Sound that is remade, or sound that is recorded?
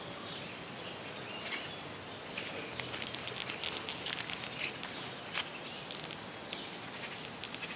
recorded